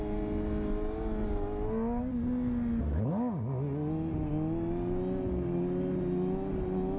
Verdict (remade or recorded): recorded